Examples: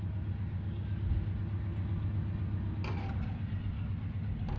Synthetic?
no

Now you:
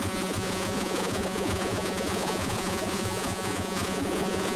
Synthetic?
yes